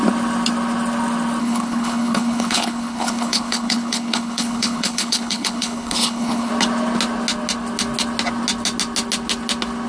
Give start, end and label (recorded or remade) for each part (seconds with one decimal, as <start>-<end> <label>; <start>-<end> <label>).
0.0-1.4 recorded; 1.4-6.5 remade; 6.5-9.9 recorded